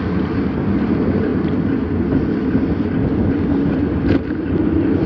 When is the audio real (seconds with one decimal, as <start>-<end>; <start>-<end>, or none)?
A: 0.0-5.1